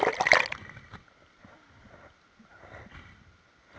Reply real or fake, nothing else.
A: real